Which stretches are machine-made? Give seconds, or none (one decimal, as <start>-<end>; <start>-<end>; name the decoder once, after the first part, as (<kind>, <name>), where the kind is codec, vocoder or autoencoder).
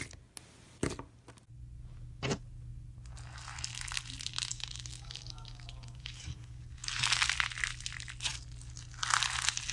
4.5-7.2 (codec, DAC)